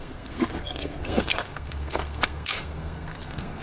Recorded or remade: remade